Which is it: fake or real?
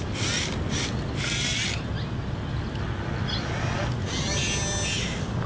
real